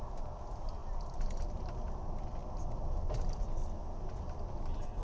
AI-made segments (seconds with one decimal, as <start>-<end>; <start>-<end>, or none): 0.8-1.7